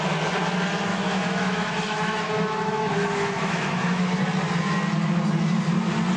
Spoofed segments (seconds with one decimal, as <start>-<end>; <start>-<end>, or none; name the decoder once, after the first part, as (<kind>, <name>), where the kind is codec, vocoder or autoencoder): 0.9-4.2 (autoencoder, DAC-VAE)